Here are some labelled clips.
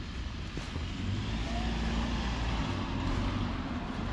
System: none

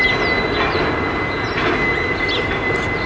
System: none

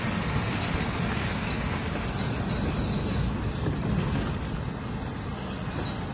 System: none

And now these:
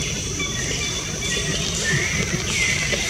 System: none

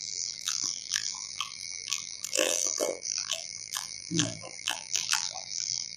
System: vocoder, BigVGAN v2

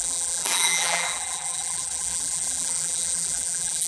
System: vocoder, BigVGAN v2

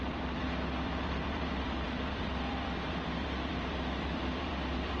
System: vocoder, BigVGAN v2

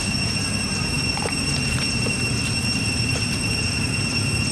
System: vocoder, BigVGAN v2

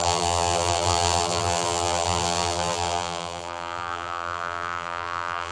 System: vocoder, BigVGAN v2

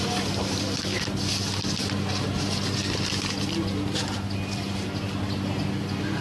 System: none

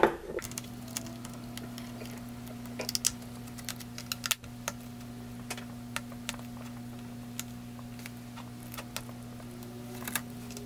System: none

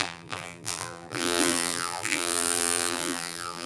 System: vocoder, BigVGAN v2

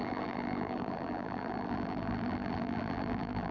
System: vocoder, BigVGAN v2